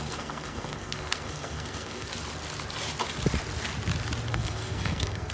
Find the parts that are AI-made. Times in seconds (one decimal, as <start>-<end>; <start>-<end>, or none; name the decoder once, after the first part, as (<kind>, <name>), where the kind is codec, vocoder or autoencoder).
0.0-2.1 (codec, SNAC); 4.3-5.3